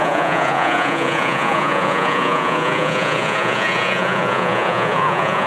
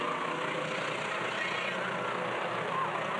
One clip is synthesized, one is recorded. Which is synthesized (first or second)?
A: first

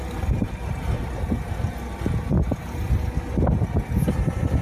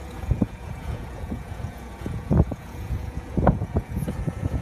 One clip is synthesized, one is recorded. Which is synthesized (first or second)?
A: second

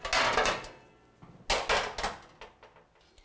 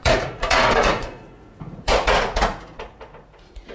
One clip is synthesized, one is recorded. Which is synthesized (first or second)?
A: second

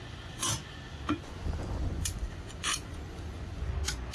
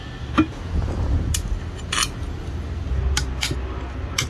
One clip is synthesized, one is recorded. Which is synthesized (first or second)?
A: first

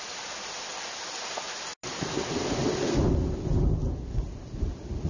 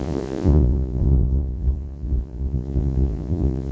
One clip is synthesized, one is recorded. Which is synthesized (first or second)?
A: second